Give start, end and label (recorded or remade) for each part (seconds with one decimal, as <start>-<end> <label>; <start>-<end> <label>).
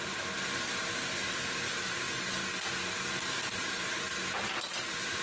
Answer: 0.0-2.4 remade; 2.4-4.8 recorded; 4.8-5.2 remade